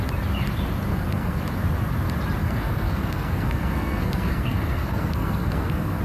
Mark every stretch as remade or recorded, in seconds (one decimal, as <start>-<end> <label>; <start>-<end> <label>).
0.0-0.9 recorded; 0.9-1.4 remade; 1.4-2.4 recorded; 2.4-6.0 remade